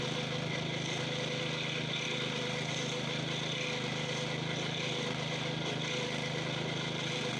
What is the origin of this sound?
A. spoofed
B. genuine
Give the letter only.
B